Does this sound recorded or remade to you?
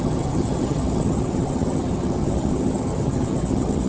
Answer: remade